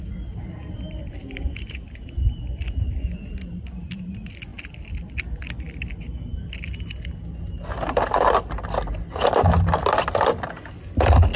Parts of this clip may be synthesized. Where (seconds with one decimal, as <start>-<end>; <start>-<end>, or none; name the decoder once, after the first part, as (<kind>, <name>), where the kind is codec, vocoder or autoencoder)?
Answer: none